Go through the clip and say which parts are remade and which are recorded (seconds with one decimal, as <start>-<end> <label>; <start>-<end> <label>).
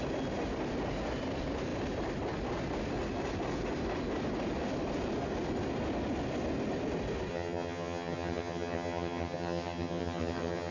0.0-7.3 recorded; 7.3-10.7 remade